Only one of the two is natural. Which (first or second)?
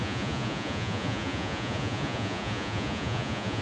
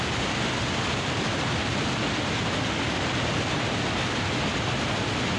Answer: second